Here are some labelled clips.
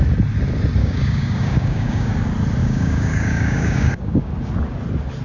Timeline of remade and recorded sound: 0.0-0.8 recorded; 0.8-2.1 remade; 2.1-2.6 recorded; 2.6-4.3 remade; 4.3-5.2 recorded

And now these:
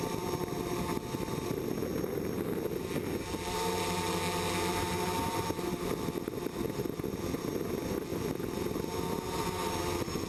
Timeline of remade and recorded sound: 0.0-10.3 recorded